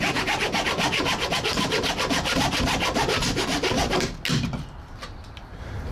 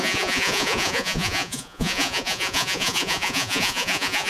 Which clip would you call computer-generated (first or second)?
second